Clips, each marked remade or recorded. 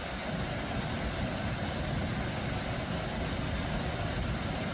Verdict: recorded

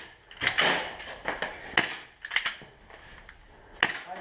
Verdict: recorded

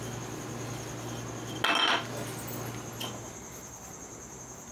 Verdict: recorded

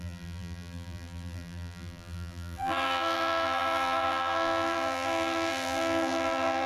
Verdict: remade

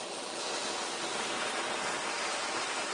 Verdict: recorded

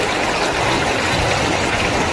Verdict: recorded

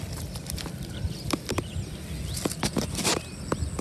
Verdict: recorded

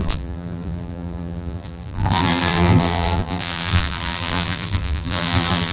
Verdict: remade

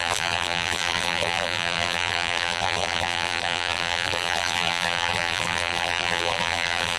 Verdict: remade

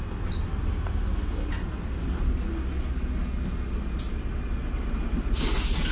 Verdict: recorded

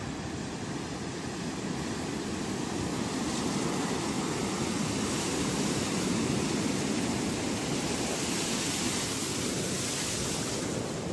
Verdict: remade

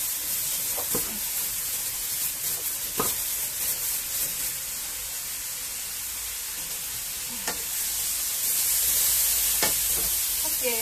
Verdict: recorded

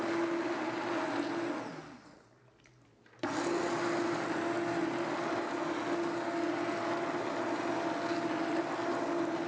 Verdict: recorded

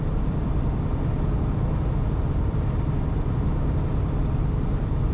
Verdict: recorded